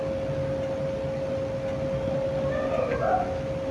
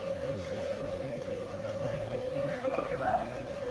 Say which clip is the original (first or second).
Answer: first